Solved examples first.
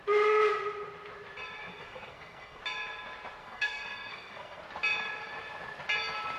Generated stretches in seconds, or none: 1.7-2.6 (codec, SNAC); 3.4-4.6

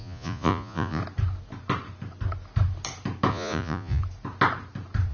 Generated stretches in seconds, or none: 0.0-1.0 (vocoder, Vocos); 3.3-4.0

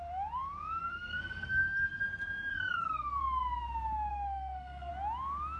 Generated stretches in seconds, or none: 0.8-2.0 (codec, SNAC); 2.5-3.2; 4.1-4.9

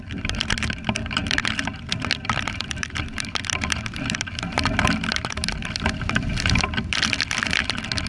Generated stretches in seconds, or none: 0.0-8.1 (vocoder, BigVGAN v2)

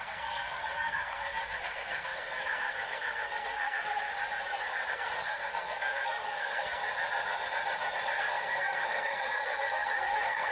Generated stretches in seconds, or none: 0.0-4.1 (codec, SNAC); 4.9-6.8; 8.2-10.5

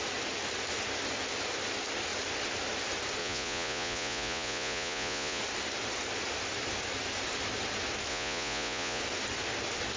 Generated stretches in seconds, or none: 3.2-5.4 (vocoder, Vocos); 8.1-9.0